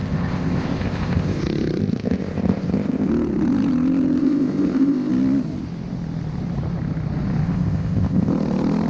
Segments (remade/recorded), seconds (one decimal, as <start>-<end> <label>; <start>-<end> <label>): 0.0-1.4 remade; 1.4-1.8 recorded; 1.8-3.1 remade; 3.1-4.2 recorded; 4.2-5.1 remade; 5.1-7.4 recorded; 7.4-8.3 remade; 8.3-8.9 recorded